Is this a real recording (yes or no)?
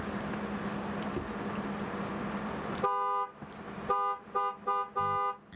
yes